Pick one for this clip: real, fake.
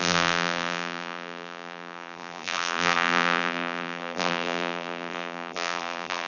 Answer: fake